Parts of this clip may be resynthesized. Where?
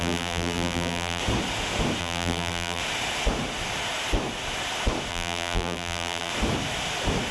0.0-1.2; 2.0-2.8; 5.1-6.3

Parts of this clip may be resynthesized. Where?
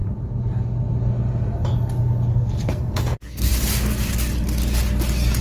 2.3-3.5